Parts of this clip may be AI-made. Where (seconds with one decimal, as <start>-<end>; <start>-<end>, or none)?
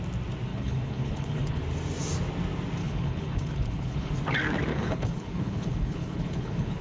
0.5-1.6; 2.8-4.1; 4.7-6.8